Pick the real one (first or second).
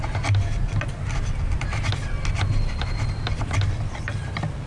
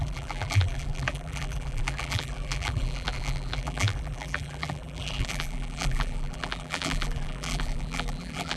first